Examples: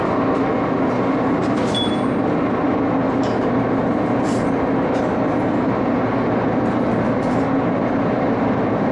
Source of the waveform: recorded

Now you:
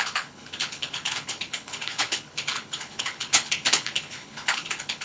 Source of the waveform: remade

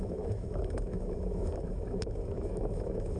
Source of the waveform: remade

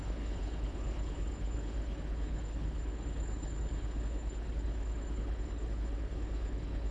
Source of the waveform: remade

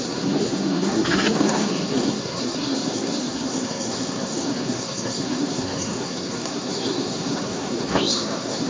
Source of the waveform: remade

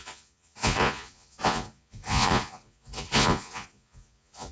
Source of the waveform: remade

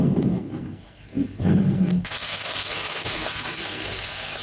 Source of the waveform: remade